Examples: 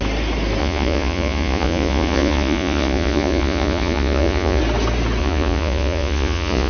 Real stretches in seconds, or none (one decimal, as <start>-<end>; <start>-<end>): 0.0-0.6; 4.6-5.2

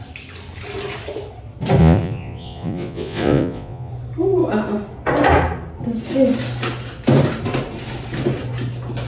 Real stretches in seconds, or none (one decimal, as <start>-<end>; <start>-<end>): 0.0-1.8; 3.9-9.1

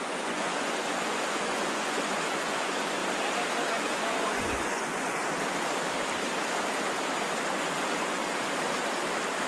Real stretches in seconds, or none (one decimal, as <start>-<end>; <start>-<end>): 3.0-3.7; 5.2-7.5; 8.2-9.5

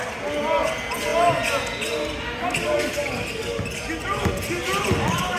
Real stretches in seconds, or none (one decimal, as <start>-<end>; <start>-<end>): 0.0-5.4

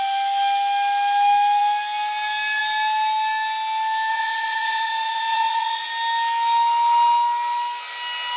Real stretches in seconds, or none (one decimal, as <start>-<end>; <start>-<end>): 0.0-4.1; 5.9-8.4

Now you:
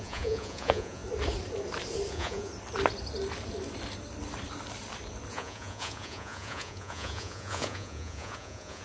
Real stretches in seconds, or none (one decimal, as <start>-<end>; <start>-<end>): 1.0-2.1; 2.5-5.3

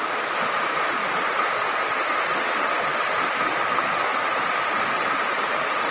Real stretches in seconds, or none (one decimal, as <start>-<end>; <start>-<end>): 0.0-5.9